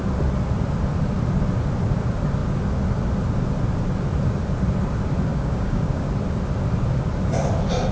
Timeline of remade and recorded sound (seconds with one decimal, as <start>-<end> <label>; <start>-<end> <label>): 0.0-5.3 recorded; 5.3-6.1 remade; 6.1-7.9 recorded